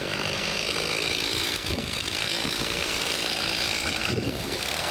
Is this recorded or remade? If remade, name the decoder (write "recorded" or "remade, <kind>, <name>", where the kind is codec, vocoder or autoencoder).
remade, codec, SNAC